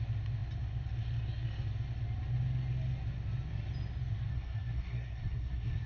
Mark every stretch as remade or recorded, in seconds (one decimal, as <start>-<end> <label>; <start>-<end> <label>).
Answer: 0.0-4.3 recorded; 4.3-5.9 remade